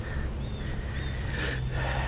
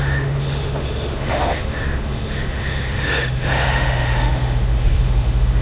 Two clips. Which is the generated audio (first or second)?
second